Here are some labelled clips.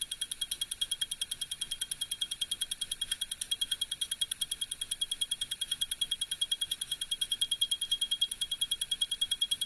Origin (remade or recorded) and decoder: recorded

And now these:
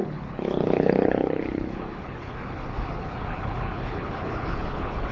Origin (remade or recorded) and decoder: remade, codec, HILCodec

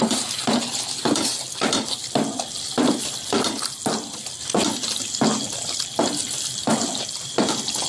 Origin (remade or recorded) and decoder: recorded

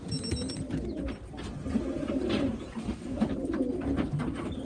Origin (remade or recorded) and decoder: recorded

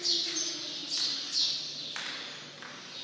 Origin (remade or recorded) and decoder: recorded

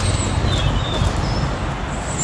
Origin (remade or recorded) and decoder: recorded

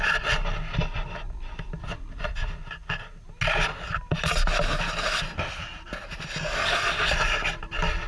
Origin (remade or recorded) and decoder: recorded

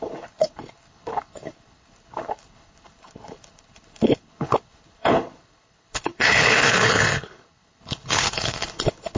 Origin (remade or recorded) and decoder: remade, codec, HILCodec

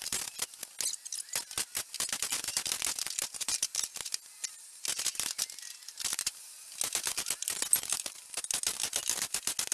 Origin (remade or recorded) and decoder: recorded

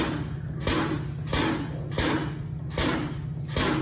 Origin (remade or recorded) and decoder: recorded